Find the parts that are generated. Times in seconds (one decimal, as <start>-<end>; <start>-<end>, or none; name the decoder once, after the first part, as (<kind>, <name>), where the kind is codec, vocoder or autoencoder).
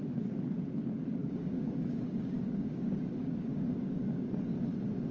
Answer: 1.2-4.3 (codec, DAC)